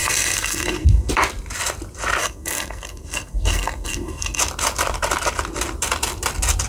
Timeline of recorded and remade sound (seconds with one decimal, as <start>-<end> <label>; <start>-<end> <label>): 0.0-1.1 remade; 1.1-2.2 recorded; 2.2-4.4 remade; 4.4-6.7 recorded